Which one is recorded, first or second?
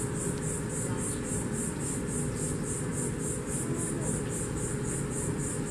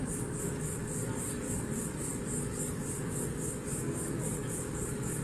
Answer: first